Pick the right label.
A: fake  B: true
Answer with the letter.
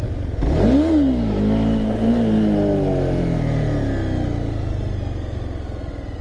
B